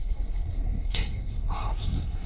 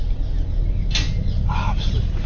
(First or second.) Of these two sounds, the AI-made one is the first